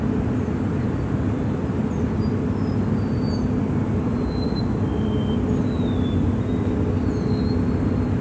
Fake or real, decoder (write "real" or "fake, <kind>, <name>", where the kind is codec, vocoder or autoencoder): real